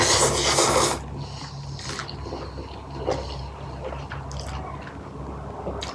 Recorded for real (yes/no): yes